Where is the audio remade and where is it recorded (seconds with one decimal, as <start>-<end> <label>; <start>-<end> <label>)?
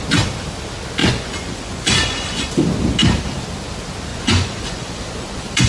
0.0-1.0 recorded; 1.0-2.5 remade; 2.5-4.1 recorded; 4.1-5.7 remade